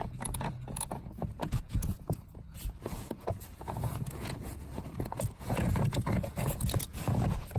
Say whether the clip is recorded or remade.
remade